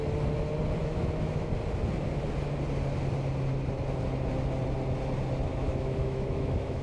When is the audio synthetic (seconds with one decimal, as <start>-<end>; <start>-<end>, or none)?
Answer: 0.8-1.5; 5.5-6.8